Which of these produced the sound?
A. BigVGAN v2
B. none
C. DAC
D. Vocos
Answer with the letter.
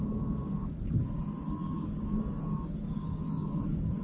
C